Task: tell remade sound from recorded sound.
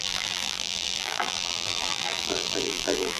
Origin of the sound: remade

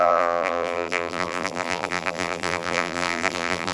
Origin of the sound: remade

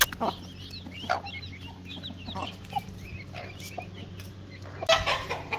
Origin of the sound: recorded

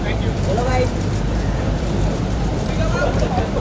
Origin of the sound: remade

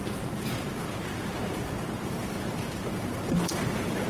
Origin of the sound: remade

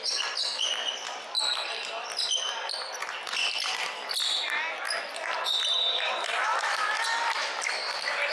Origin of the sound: remade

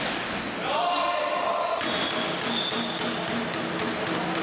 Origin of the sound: recorded